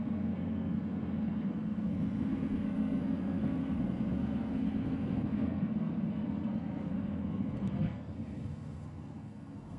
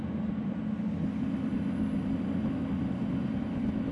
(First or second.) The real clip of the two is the second